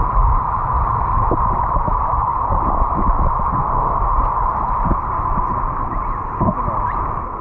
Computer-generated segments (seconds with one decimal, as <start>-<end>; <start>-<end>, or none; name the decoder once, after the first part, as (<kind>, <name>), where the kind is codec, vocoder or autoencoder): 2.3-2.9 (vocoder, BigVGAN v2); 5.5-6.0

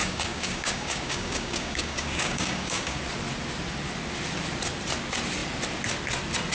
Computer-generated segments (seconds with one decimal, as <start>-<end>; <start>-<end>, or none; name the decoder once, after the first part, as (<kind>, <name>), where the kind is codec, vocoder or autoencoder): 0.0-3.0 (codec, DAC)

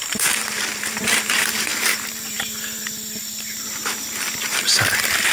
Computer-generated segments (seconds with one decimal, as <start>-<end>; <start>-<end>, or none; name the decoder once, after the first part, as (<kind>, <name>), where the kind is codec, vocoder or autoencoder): 0.0-2.8 (vocoder, BigVGAN v2)